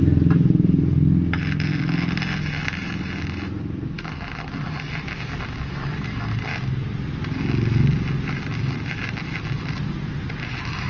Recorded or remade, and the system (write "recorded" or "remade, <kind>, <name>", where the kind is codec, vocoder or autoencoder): recorded